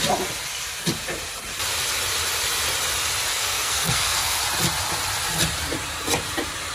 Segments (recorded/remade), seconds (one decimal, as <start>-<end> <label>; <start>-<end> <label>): 0.0-3.3 recorded; 3.3-4.4 remade; 4.4-6.7 recorded